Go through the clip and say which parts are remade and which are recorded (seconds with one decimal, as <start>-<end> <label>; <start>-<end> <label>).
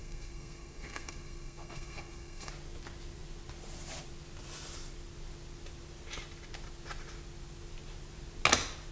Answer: 0.0-2.5 remade; 2.5-8.9 recorded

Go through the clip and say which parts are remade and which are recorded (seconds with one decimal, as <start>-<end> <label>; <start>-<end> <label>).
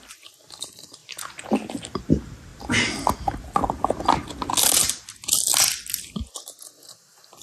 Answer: 0.0-7.4 recorded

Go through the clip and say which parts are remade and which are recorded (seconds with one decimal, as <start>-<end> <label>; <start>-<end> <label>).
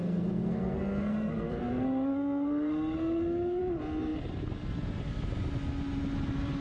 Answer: 0.0-3.6 remade; 3.6-6.6 recorded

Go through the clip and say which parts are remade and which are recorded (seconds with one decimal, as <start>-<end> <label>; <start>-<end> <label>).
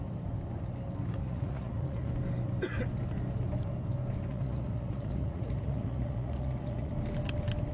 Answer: 0.0-1.2 recorded; 1.2-2.1 remade; 2.1-4.3 recorded; 4.3-6.9 remade; 6.9-7.7 recorded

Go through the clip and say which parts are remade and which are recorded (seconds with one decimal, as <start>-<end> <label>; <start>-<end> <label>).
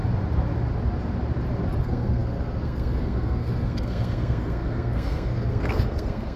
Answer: 0.0-1.8 recorded; 1.8-6.4 remade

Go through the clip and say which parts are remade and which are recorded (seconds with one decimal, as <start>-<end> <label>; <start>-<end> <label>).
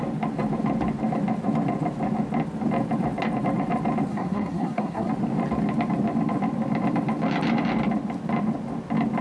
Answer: 0.0-4.1 recorded; 4.1-5.1 remade; 5.1-9.2 recorded